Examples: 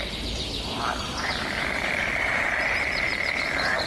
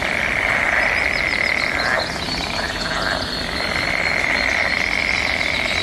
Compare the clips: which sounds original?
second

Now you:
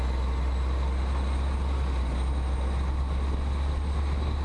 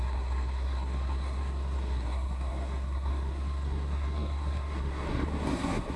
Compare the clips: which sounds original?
first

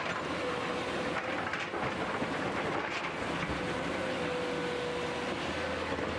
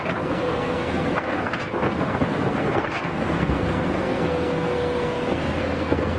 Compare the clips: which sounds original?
first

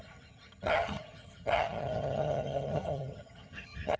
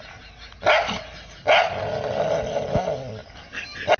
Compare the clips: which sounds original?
second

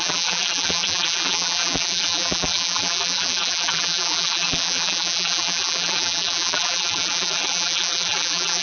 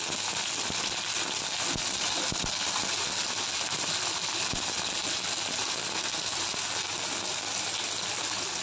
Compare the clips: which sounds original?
second